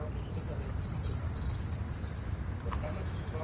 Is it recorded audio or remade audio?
recorded